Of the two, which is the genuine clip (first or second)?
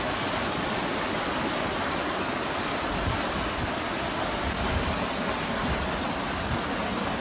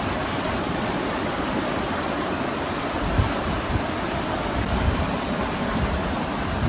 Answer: first